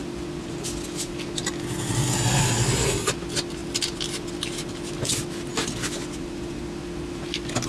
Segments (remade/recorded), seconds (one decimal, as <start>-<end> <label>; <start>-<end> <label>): 0.0-7.7 recorded